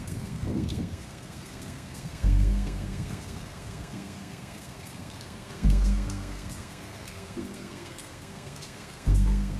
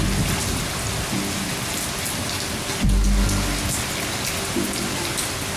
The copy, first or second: first